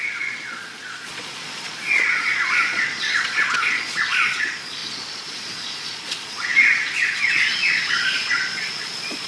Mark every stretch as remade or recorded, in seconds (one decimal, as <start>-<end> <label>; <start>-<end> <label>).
0.0-9.3 remade